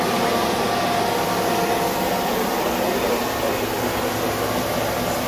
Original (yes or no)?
yes